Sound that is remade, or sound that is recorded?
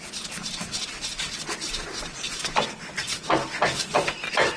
recorded